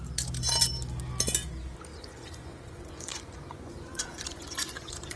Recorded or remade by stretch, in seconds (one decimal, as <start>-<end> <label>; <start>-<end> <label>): 0.0-1.9 recorded; 1.9-5.2 remade